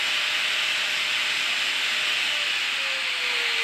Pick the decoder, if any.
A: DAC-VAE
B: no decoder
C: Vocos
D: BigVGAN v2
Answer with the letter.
B